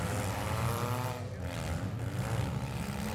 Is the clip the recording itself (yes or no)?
yes